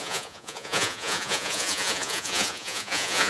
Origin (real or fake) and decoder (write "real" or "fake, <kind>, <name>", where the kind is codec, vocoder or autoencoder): fake, vocoder, Vocos